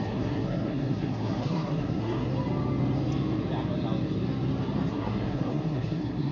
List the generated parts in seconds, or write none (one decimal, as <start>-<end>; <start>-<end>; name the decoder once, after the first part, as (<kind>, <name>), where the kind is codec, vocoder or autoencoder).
0.0-2.3 (codec, SNAC); 4.9-6.3